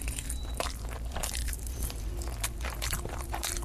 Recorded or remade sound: remade